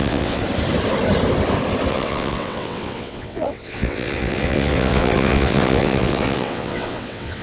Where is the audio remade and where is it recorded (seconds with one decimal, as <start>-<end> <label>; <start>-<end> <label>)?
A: 0.0-0.4 remade; 0.4-1.9 recorded; 1.9-7.4 remade